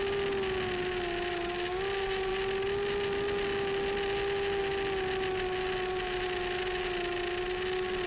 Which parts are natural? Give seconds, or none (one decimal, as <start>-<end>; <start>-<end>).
0.0-8.1